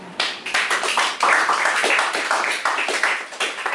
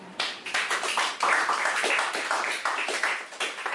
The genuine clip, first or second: second